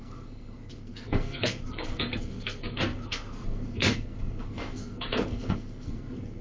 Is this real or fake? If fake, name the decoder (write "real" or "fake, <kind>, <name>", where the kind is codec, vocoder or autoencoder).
fake, codec, SNAC